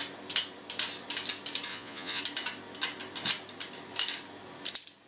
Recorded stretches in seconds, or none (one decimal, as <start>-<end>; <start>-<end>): 0.0-1.7; 2.2-5.1